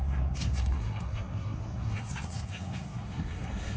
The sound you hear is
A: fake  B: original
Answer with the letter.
A